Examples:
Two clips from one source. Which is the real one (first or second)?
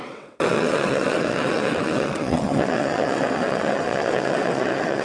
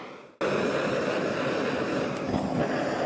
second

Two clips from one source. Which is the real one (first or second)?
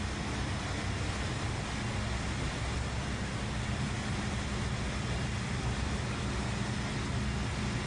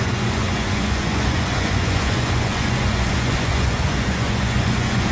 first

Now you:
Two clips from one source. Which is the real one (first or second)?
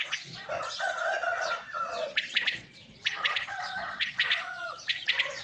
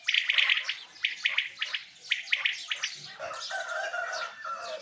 second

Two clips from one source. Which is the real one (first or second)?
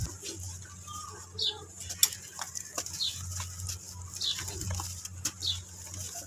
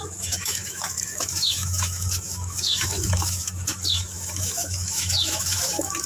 first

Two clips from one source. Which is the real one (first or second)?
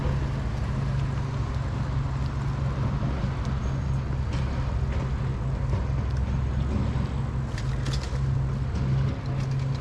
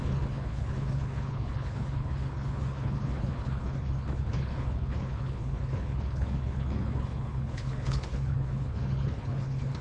first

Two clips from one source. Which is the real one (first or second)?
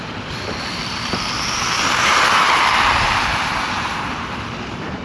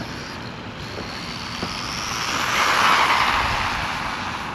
second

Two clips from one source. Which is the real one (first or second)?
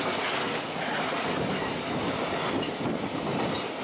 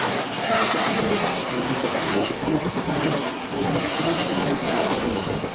first